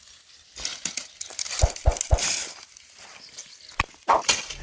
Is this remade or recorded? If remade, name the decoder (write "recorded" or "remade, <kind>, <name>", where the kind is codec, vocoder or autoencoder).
recorded